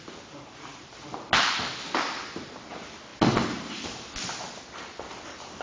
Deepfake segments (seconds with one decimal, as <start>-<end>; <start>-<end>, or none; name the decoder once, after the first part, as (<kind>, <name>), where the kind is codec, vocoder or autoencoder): none

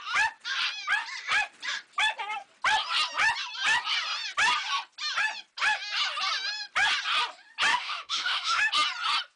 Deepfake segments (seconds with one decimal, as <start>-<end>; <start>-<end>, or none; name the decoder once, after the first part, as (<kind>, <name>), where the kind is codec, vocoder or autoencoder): 7.7-8.7 (autoencoder, DAC-VAE)